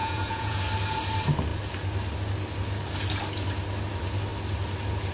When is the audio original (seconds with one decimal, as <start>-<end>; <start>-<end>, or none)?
0.6-5.1